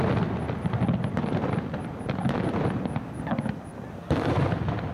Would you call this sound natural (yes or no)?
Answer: yes